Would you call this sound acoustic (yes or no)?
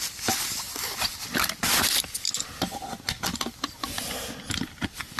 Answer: yes